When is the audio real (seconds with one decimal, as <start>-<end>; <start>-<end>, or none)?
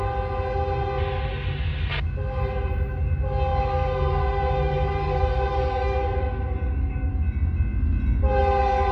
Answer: 0.0-3.5; 7.1-8.9